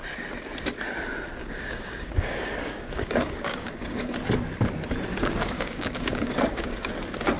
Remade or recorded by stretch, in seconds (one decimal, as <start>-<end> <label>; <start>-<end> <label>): 0.0-1.4 recorded; 1.4-4.1 remade; 4.1-5.1 recorded; 5.1-6.9 remade; 6.9-7.4 recorded